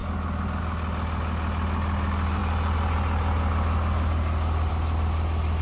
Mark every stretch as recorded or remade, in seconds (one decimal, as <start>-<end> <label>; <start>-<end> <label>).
0.0-5.6 recorded